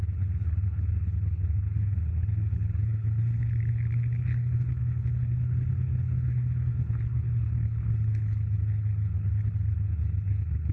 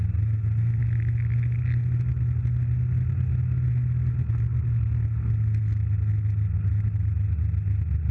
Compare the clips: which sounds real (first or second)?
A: second